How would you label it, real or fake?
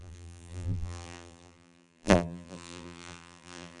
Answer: fake